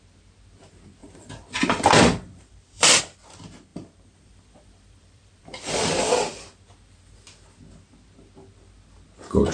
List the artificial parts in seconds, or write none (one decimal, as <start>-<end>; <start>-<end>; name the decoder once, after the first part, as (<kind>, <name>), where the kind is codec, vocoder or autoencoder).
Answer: 1.0-3.0 (vocoder, BigVGAN v2); 3.7-6.6